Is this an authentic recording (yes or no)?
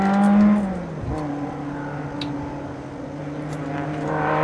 yes